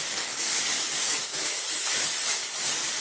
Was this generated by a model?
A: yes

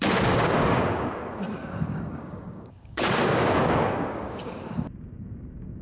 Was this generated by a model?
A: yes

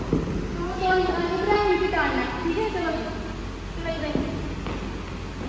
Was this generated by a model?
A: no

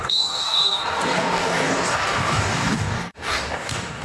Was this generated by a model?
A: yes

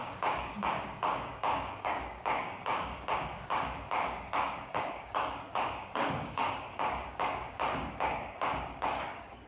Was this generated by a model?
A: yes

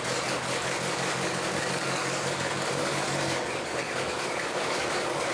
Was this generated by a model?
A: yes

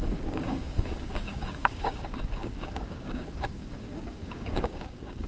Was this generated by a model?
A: yes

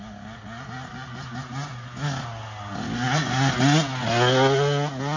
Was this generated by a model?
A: no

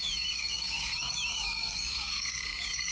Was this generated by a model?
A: yes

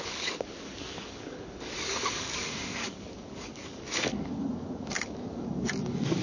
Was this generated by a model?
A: yes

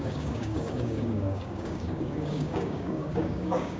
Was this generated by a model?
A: yes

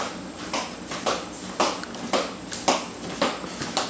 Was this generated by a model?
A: no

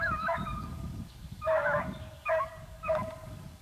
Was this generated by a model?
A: yes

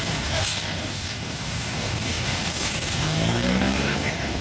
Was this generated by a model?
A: yes